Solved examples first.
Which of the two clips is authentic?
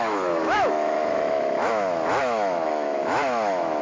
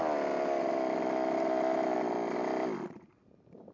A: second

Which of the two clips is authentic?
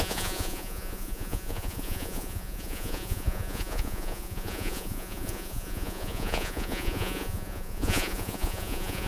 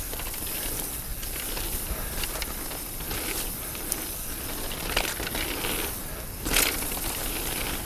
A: second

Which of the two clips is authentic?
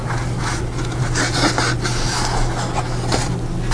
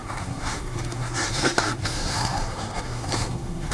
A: first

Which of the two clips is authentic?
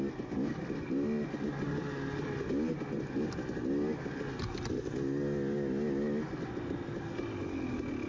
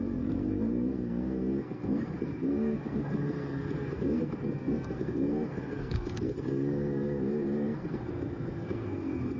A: first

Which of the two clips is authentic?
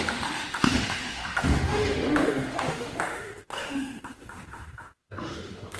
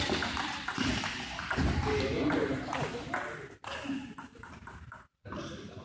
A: second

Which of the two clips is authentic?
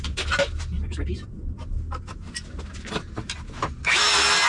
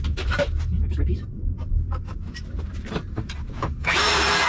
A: first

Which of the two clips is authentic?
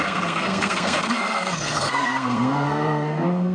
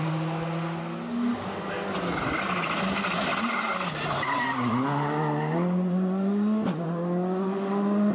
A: second